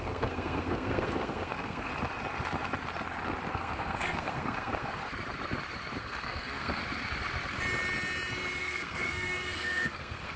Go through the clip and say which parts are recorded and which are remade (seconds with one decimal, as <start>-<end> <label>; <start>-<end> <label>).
0.0-1.9 remade; 1.9-3.5 recorded; 3.5-5.0 remade; 5.0-6.0 recorded; 6.0-6.8 remade; 6.8-8.6 recorded; 8.6-10.4 remade